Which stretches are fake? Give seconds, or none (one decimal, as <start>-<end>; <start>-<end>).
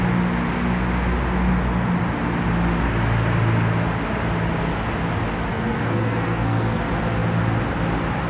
5.5-6.8